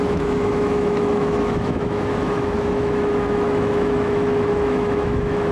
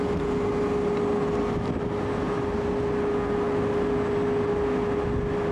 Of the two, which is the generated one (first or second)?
first